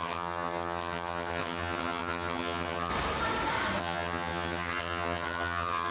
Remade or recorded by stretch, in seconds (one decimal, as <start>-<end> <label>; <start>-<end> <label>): 0.0-2.9 remade; 2.9-3.8 recorded; 3.8-5.9 remade